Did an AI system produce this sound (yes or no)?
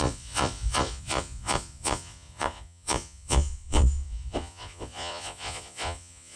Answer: yes